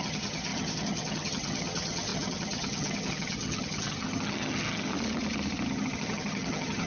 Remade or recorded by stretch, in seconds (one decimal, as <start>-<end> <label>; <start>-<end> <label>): 0.0-4.9 remade; 4.9-5.7 recorded; 5.7-6.9 remade